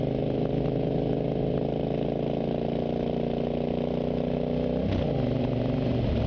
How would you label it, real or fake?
real